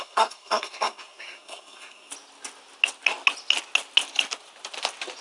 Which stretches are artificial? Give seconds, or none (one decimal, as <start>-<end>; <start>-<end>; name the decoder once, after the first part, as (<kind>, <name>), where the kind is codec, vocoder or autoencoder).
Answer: 0.0-2.1 (codec, SNAC)